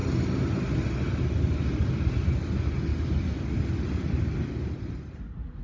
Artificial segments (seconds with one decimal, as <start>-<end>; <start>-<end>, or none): none